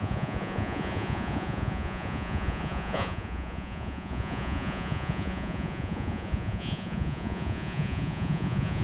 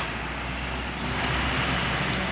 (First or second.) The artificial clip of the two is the first